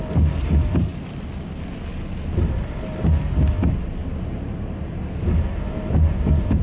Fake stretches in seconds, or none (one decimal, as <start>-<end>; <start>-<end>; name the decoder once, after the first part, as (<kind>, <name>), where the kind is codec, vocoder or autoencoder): none